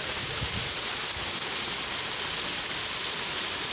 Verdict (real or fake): real